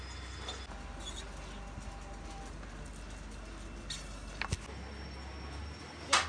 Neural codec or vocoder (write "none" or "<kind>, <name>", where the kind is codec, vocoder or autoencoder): none